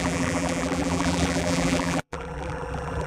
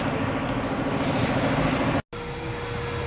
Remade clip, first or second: first